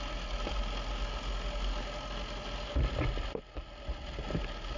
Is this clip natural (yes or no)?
yes